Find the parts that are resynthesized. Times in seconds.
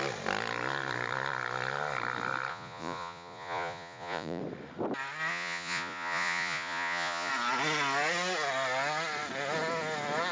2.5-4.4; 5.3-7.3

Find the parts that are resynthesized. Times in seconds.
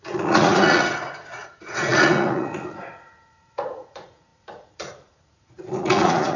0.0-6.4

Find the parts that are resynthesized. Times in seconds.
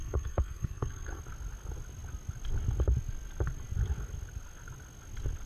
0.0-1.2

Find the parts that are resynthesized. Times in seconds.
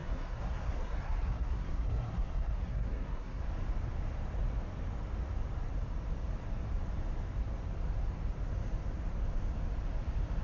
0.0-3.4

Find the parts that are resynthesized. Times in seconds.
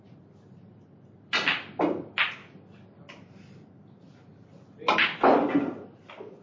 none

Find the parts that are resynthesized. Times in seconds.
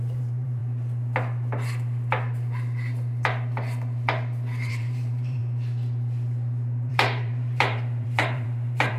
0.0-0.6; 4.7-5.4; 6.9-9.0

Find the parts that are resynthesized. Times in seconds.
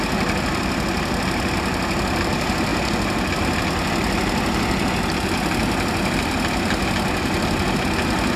none